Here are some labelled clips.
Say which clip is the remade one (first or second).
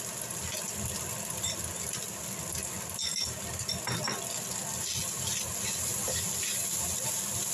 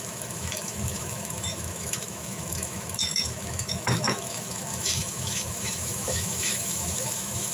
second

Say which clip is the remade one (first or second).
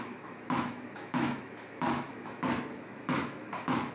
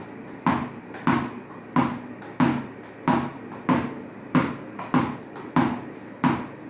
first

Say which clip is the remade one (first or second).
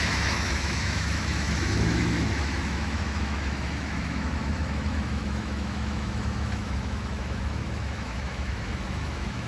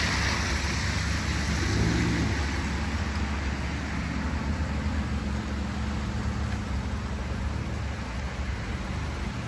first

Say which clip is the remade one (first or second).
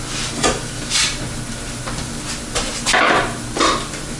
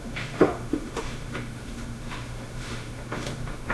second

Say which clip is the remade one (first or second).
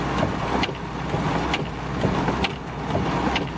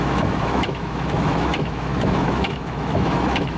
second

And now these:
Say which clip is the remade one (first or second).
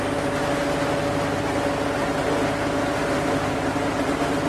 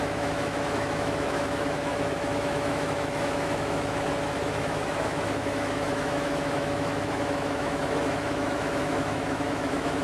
second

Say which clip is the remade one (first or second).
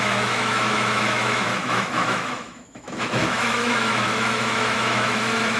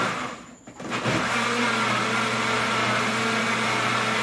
first